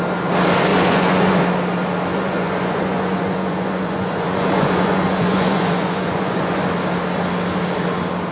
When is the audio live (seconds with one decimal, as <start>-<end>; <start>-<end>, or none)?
0.0-0.7; 1.4-2.1; 6.6-8.3